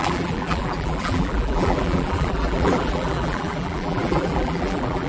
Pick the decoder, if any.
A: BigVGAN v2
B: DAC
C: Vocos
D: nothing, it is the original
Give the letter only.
A